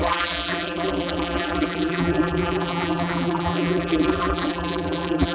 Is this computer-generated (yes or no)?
yes